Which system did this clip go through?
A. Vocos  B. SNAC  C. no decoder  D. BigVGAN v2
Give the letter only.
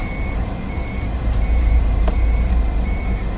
D